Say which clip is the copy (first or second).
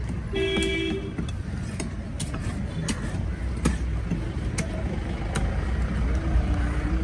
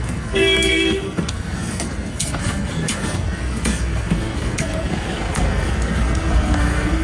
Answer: second